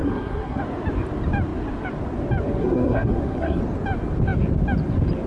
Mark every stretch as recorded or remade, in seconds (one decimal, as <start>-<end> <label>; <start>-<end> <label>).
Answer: 0.0-0.6 remade; 0.6-2.6 recorded; 2.6-3.6 remade; 3.6-5.3 recorded